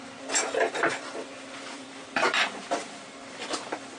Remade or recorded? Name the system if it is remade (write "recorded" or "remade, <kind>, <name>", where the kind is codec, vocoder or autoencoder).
remade, vocoder, BigVGAN v2